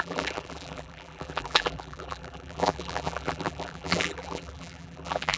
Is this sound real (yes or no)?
no